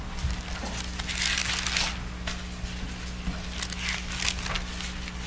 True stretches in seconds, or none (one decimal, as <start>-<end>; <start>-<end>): 0.0-5.3